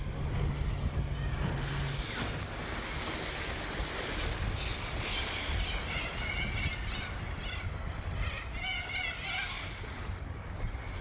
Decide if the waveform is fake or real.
real